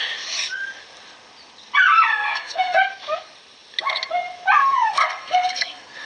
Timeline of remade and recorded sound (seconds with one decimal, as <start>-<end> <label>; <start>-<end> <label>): 0.0-2.1 recorded; 2.1-2.8 remade; 2.8-4.6 recorded; 4.6-6.1 remade

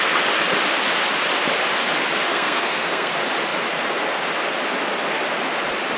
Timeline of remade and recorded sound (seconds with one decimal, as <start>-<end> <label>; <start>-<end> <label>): 0.0-2.3 recorded; 2.3-3.1 remade; 3.1-6.0 recorded

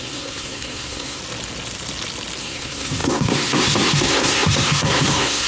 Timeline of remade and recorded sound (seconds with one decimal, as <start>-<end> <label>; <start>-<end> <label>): 0.0-1.2 remade; 1.2-2.4 recorded; 2.4-5.5 remade

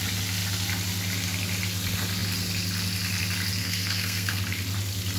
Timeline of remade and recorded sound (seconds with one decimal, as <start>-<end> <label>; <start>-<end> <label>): 0.0-3.6 recorded; 3.6-4.4 remade; 4.4-5.2 recorded